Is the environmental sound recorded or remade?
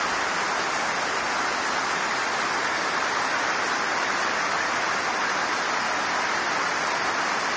recorded